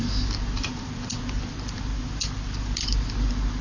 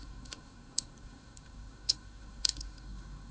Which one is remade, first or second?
second